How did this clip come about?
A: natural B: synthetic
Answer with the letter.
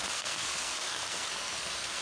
B